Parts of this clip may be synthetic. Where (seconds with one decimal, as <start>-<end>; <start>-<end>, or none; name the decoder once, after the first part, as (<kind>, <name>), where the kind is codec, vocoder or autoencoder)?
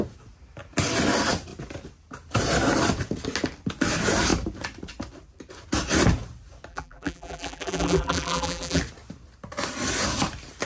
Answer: 6.7-8.8 (vocoder, BigVGAN v2)